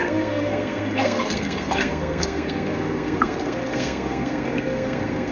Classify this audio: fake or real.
fake